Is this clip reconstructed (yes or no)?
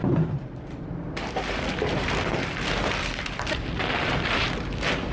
yes